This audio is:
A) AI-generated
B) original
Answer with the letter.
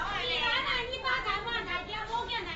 B